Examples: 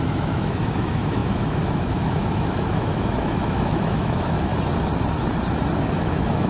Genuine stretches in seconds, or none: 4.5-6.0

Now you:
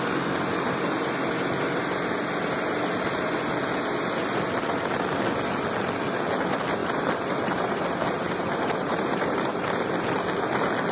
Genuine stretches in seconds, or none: 0.0-6.8; 9.9-10.9

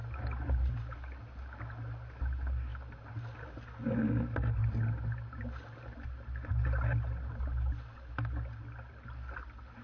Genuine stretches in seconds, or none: 0.0-9.8

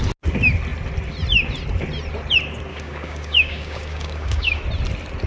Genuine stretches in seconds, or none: 0.0-2.7; 4.6-5.3

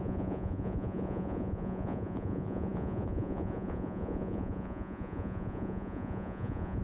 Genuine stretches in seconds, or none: none

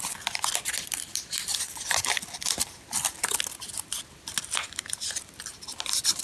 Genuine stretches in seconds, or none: none